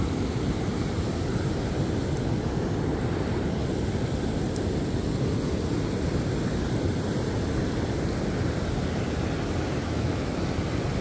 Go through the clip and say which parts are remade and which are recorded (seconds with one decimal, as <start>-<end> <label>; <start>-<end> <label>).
0.0-9.8 recorded; 9.8-10.4 remade; 10.4-11.0 recorded